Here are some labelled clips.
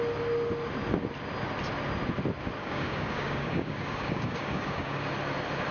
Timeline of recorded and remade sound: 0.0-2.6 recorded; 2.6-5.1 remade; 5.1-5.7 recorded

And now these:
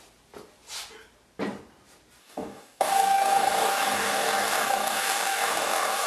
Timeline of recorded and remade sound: 0.0-2.2 recorded; 2.2-6.1 remade

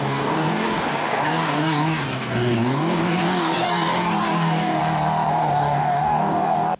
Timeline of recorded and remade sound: 0.0-4.8 remade; 4.8-5.3 recorded; 5.3-6.8 remade

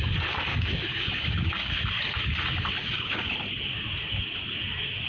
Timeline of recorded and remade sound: 0.0-0.5 recorded; 0.5-1.8 remade; 1.8-2.8 recorded; 2.8-3.3 remade; 3.3-5.1 recorded

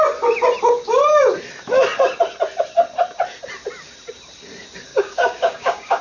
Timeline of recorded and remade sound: 0.0-4.9 recorded; 4.9-6.0 remade

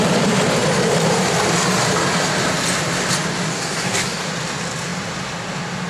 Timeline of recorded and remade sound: 0.0-3.5 recorded; 3.5-4.3 remade; 4.3-5.9 recorded

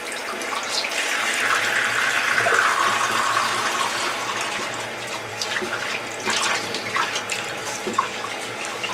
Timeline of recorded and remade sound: 0.0-5.3 recorded; 5.3-5.8 remade; 5.8-7.6 recorded; 7.6-8.9 remade